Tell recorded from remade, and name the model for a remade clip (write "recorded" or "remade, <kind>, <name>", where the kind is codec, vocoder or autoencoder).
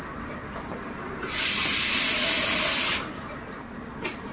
recorded